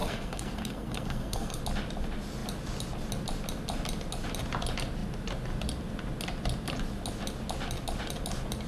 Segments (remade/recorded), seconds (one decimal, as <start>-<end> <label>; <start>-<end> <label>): 0.0-1.6 remade; 1.6-8.7 recorded